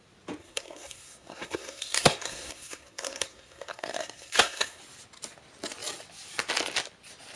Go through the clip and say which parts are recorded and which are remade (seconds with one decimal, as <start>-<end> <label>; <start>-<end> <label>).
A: 0.0-0.4 recorded; 0.4-4.8 remade; 4.8-7.4 recorded